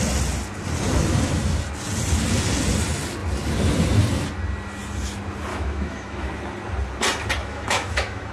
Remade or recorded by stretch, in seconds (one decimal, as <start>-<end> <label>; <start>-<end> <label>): 0.0-5.5 recorded; 5.5-6.3 remade; 6.3-7.4 recorded; 7.4-8.3 remade